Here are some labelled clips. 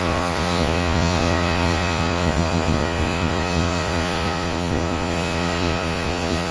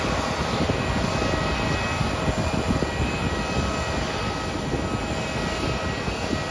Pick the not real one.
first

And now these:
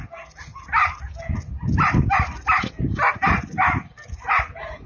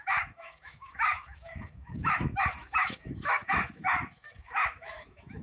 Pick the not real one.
second